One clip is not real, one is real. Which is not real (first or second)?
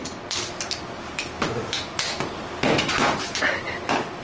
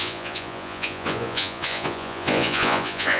second